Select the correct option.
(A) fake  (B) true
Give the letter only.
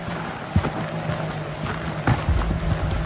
B